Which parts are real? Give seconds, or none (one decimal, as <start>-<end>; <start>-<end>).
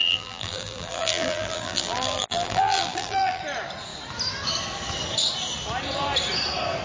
3.4-6.8